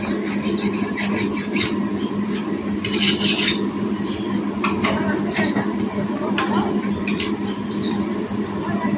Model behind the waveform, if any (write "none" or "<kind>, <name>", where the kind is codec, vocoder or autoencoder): none